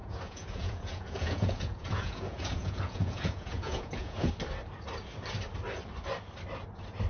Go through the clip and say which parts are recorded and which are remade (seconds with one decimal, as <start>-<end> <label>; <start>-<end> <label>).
0.0-4.3 remade; 4.3-7.1 recorded